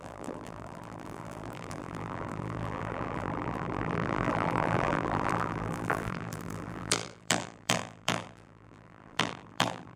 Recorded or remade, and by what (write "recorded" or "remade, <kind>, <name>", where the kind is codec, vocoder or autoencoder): remade, vocoder, BigVGAN v2